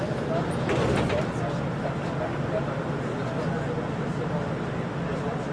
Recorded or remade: recorded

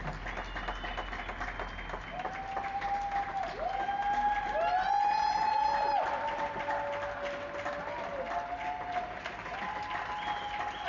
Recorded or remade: recorded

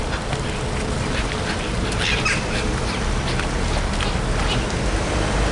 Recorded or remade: recorded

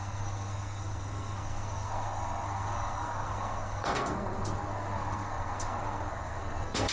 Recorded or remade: remade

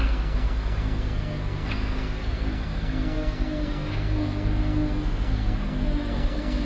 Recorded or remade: remade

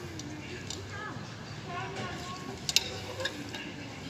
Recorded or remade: recorded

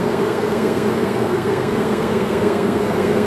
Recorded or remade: remade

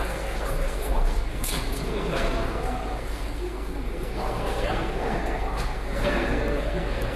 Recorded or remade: remade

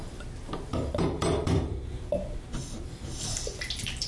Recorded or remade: recorded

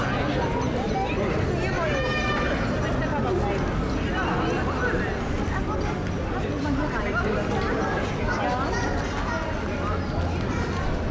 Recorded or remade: recorded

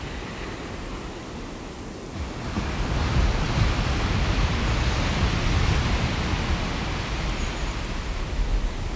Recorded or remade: recorded